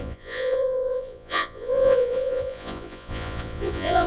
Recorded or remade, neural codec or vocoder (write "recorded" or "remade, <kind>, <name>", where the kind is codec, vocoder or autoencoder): remade, vocoder, Vocos